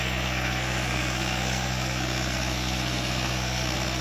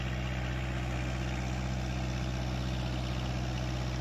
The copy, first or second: first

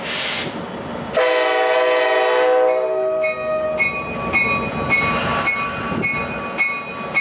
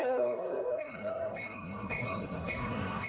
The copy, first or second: second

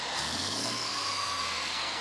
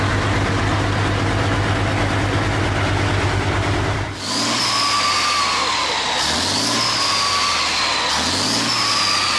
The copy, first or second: first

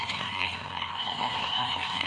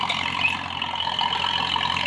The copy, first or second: first